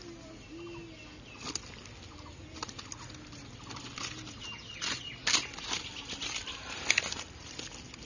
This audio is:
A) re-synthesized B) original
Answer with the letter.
B